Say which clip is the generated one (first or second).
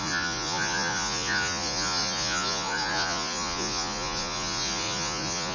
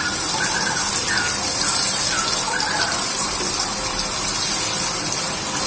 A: first